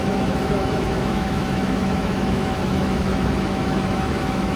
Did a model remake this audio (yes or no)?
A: yes